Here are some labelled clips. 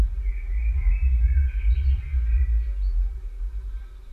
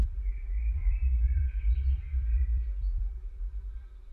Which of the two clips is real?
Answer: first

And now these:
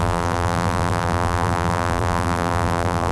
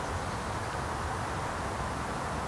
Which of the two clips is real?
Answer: second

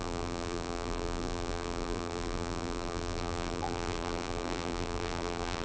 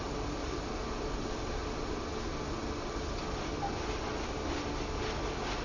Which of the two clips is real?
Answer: second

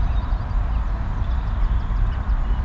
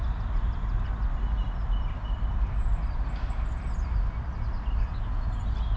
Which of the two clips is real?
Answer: second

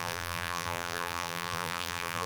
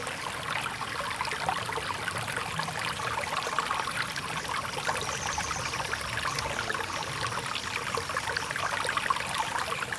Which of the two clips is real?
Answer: second